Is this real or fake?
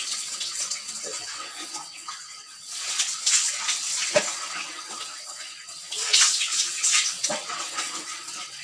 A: fake